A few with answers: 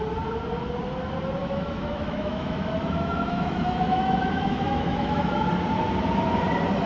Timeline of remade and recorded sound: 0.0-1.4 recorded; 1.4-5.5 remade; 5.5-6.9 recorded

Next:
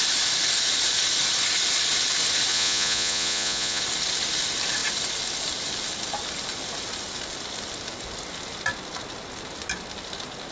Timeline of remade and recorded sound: 0.0-2.5 recorded; 2.5-3.8 remade; 3.8-10.5 recorded

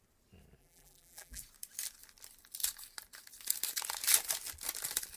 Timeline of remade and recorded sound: 0.0-0.6 recorded; 0.6-1.4 remade; 1.4-5.2 recorded

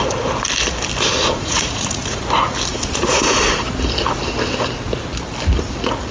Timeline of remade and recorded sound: 0.0-1.2 recorded; 1.2-2.2 remade; 2.2-2.7 recorded; 2.7-3.4 remade; 3.4-6.1 recorded

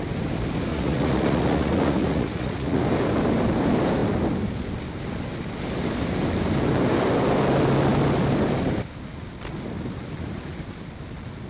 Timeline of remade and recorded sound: 0.0-0.7 recorded; 0.7-2.8 remade; 2.8-11.5 recorded

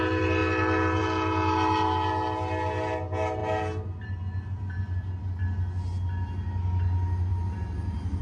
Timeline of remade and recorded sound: 0.0-8.2 recorded

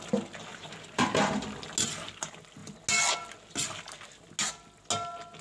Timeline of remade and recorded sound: 0.0-0.5 recorded; 0.5-1.4 remade; 1.4-5.4 recorded

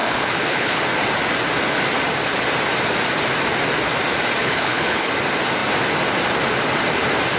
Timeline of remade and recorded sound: 0.0-0.8 remade; 0.8-4.4 recorded; 4.4-5.1 remade; 5.1-7.4 recorded